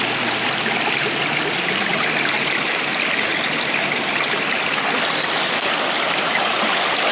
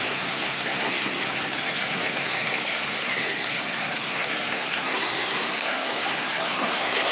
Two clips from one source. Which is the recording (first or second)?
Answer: first